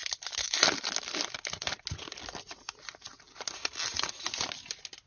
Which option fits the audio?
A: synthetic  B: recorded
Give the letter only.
B